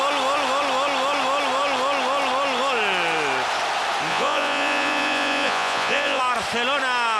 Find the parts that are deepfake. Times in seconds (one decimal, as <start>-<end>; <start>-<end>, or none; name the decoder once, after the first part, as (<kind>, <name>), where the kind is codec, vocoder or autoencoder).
4.1-6.2 (vocoder, Vocos)